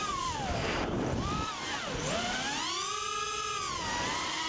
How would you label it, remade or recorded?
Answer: recorded